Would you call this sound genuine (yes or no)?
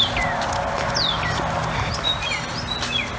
yes